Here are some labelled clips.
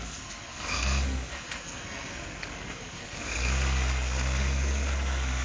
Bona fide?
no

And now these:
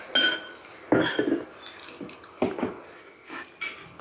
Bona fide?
yes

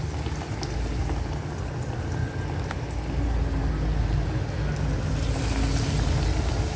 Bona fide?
yes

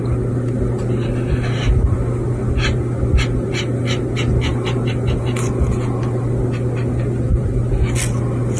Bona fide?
yes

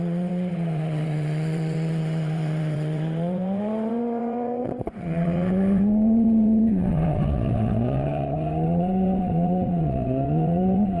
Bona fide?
no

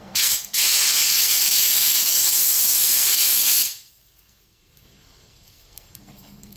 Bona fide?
no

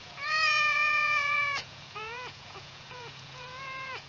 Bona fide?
no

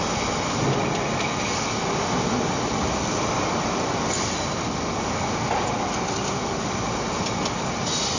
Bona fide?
yes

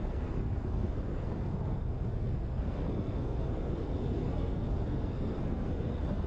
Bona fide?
no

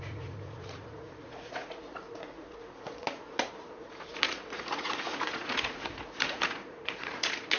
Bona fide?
no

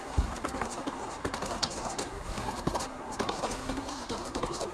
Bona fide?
no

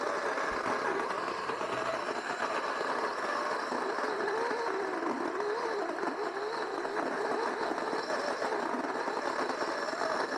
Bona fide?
yes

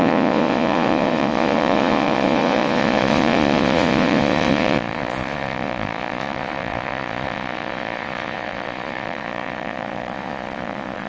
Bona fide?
no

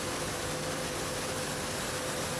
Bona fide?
yes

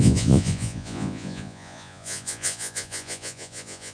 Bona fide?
no